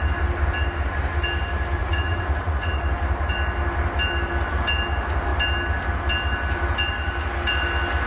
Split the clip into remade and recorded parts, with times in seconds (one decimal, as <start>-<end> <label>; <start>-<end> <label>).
0.0-1.8 recorded; 1.8-2.8 remade; 2.8-8.1 recorded